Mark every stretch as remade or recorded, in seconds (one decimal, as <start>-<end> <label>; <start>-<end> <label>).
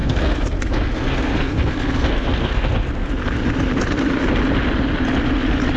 0.0-3.1 remade; 3.1-5.8 recorded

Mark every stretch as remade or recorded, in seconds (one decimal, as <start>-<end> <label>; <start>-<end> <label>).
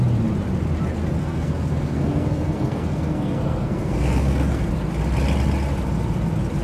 0.0-1.2 recorded; 1.2-4.7 remade; 4.7-6.6 recorded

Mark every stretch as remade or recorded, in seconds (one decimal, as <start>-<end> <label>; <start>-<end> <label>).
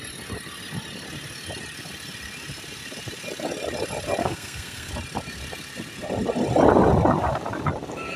0.0-4.2 recorded; 4.2-4.9 remade; 4.9-8.2 recorded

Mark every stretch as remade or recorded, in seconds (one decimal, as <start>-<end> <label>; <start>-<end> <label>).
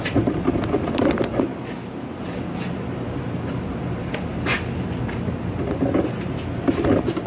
0.0-7.3 recorded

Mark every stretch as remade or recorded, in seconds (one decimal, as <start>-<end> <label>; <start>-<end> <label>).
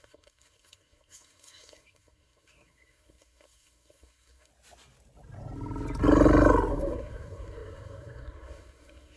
0.0-4.5 remade; 4.5-6.7 recorded; 6.7-9.2 remade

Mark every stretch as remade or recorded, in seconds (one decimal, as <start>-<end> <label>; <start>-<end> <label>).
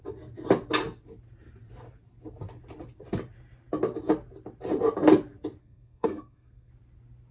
0.0-5.6 recorded; 5.6-6.7 remade; 6.7-7.3 recorded